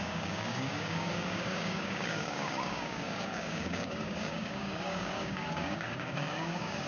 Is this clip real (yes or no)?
no